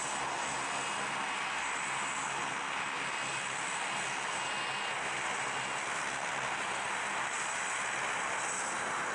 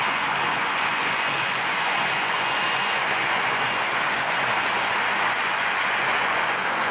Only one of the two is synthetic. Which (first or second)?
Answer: second